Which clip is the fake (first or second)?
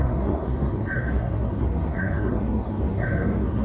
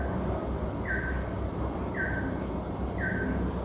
first